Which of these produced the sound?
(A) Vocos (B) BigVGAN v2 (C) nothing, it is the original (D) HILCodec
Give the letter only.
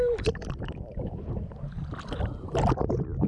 C